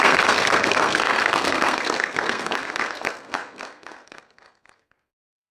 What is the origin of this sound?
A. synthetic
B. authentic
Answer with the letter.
A